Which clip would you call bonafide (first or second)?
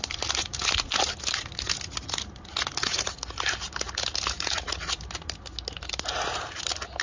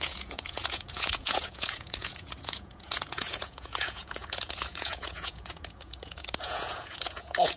first